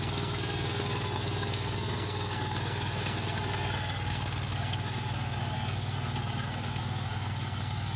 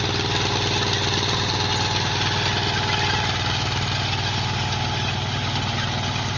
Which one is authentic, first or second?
second